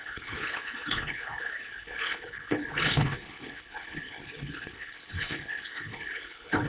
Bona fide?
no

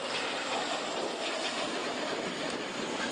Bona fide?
yes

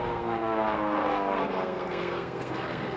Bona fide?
no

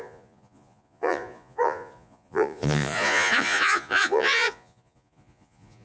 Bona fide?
no